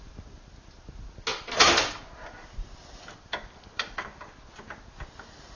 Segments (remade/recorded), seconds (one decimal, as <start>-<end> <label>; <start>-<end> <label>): 0.0-5.6 recorded